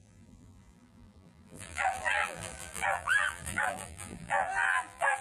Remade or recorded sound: remade